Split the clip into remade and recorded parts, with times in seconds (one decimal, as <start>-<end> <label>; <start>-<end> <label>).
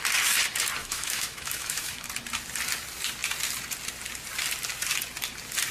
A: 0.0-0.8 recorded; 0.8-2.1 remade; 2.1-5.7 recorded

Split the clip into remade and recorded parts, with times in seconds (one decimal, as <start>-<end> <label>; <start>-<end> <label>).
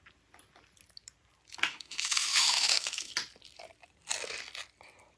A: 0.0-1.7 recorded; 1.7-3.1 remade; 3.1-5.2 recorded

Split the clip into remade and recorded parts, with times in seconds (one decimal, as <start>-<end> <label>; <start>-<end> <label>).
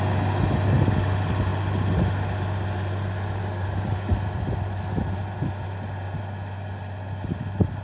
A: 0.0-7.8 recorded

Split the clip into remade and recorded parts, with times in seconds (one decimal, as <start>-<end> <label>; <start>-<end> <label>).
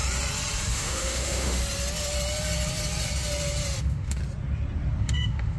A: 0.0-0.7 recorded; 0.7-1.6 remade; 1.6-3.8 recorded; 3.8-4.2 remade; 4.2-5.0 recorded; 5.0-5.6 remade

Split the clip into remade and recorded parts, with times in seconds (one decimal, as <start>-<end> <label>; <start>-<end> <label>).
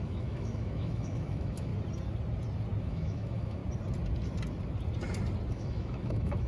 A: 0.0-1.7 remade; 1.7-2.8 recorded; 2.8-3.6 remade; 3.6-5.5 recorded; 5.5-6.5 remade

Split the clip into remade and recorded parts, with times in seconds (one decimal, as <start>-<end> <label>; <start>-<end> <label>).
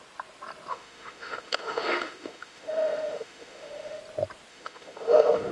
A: 0.0-0.7 recorded; 0.7-4.0 remade; 4.0-4.5 recorded; 4.5-5.5 remade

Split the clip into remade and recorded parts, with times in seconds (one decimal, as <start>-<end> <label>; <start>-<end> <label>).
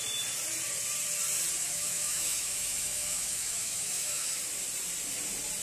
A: 0.0-1.6 recorded; 1.6-4.4 remade; 4.4-5.6 recorded